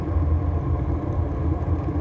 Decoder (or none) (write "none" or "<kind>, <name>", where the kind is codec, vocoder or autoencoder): none